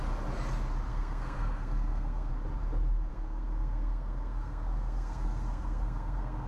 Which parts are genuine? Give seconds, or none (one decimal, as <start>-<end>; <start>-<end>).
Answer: 0.0-0.9; 2.3-3.1